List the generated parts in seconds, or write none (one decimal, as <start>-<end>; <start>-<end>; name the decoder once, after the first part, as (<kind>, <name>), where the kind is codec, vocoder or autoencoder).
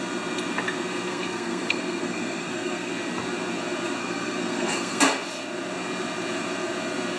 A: 1.1-2.9 (codec, SNAC); 4.0-5.0